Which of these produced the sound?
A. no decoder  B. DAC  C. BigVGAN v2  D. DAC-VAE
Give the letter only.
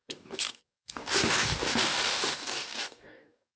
B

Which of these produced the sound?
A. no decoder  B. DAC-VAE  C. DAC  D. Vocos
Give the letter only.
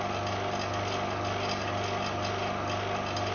A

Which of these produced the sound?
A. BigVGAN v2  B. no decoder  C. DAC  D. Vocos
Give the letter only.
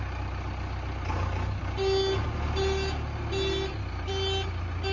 B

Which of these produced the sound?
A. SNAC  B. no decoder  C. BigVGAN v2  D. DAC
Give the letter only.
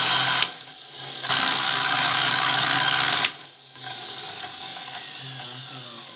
D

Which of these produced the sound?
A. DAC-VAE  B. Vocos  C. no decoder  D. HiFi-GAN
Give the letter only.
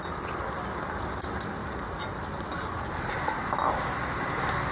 C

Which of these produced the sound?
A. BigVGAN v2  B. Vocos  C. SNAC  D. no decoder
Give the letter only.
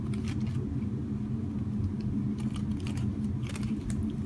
D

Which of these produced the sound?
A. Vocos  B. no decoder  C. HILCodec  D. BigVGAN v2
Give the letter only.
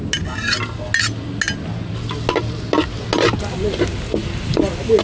B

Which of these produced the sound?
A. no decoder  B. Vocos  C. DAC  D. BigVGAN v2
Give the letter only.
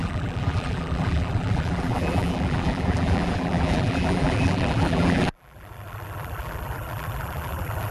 D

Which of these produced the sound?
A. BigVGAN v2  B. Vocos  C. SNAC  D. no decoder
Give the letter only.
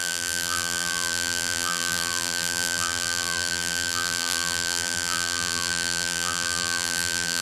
A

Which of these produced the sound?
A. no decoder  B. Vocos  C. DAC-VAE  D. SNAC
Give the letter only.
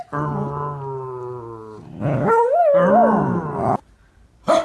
A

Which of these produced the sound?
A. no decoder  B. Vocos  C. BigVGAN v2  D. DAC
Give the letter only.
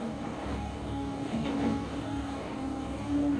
D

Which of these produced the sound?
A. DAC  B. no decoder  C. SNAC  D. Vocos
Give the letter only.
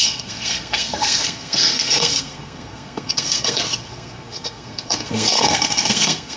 C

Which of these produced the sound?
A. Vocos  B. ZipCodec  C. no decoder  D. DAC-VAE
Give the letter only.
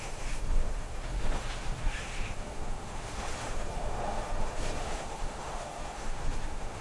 D